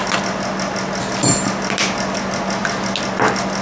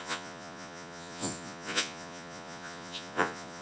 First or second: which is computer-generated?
second